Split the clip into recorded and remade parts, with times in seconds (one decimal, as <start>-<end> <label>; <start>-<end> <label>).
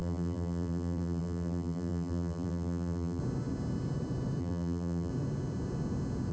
0.0-3.2 remade; 3.2-4.4 recorded; 4.4-5.1 remade; 5.1-6.3 recorded